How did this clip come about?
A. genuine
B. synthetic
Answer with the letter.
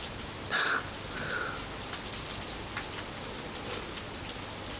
A